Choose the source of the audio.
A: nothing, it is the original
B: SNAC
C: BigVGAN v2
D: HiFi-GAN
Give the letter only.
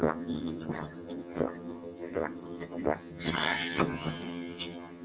D